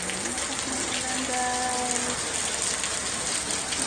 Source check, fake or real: real